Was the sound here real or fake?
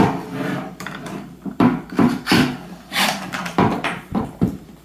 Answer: fake